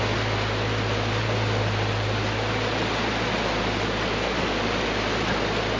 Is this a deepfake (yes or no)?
no